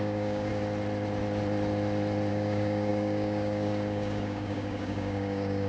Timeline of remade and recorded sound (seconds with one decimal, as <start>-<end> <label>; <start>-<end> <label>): 0.0-0.5 remade; 0.5-2.3 recorded; 2.3-5.7 remade